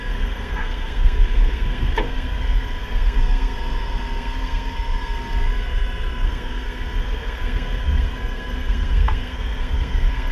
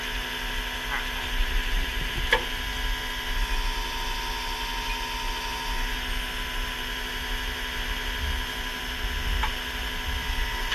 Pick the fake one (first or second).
first